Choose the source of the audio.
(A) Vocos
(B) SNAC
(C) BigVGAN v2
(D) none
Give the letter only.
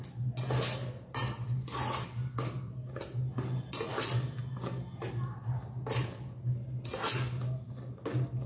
D